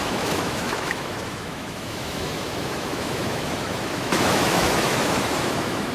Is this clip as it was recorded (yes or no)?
no